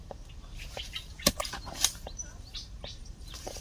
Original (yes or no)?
no